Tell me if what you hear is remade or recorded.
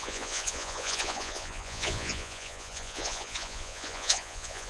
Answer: remade